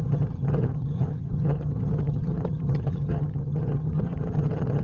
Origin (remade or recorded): remade